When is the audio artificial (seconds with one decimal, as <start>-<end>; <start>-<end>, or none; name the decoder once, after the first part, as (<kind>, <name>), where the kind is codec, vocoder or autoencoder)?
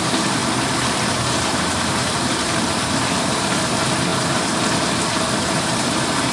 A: 0.0-0.4 (vocoder, BigVGAN v2); 1.1-6.3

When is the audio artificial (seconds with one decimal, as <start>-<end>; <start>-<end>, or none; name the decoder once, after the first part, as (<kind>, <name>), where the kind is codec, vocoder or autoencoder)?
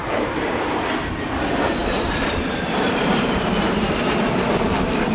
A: 0.0-0.6 (vocoder, BigVGAN v2); 1.8-5.1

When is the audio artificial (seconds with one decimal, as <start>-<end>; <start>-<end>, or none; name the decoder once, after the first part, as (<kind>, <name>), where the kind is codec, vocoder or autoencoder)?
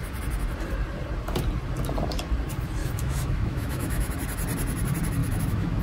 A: 2.8-4.1 (autoencoder, DAC-VAE); 5.2-5.8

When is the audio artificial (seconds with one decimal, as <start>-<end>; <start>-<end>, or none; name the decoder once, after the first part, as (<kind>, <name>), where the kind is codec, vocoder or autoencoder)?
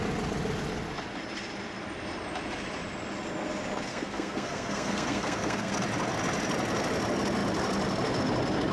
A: 3.9-5.7 (codec, SNAC)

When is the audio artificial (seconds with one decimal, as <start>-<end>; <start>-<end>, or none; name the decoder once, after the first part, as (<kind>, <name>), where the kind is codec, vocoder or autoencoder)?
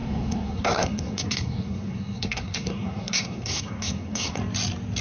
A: 0.0-4.4 (codec, SNAC)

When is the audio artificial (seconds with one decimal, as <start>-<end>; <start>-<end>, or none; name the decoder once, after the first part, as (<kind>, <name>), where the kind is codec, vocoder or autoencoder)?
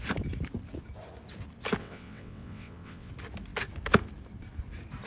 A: 1.8-3.1 (vocoder, WaveNeXt)